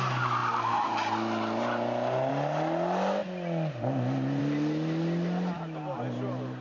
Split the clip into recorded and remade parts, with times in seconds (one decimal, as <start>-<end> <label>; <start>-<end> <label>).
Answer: 0.0-6.6 recorded